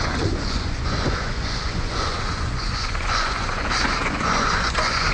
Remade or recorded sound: remade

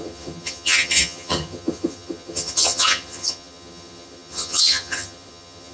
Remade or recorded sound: remade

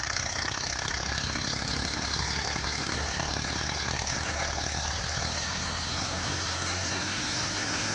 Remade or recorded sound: remade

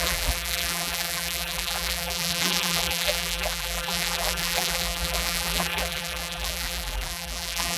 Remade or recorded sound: remade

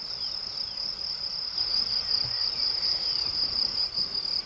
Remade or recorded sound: recorded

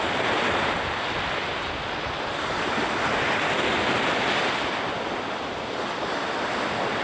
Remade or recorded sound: recorded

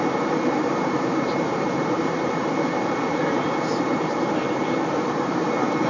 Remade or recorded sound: remade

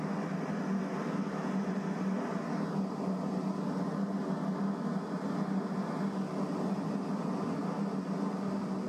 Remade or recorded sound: recorded